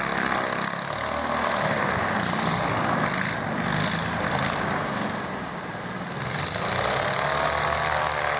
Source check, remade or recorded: recorded